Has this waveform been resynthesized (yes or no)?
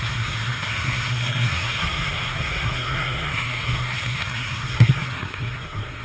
yes